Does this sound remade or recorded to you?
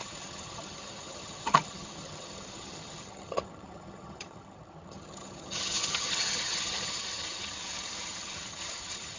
remade